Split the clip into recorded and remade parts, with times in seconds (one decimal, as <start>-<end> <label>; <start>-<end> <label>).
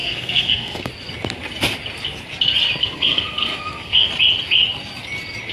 0.0-0.9 remade; 0.9-2.8 recorded; 2.8-4.1 remade; 4.1-5.5 recorded